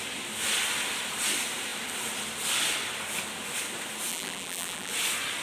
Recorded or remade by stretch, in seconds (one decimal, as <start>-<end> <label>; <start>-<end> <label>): 0.0-4.1 recorded; 4.1-4.9 remade; 4.9-5.4 recorded